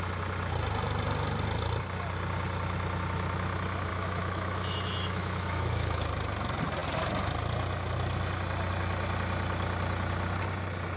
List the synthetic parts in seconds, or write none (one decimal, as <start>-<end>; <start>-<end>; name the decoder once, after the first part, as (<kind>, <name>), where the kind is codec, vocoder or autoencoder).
3.9-6.1 (autoencoder, DAC-VAE)